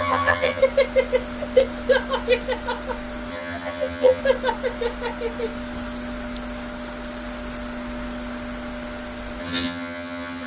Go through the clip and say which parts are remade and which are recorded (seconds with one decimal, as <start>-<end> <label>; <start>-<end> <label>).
0.0-0.6 remade; 0.6-3.3 recorded; 3.3-4.2 remade; 4.2-9.4 recorded; 9.4-10.5 remade